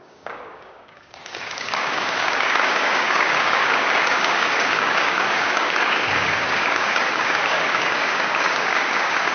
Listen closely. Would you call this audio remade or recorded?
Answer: remade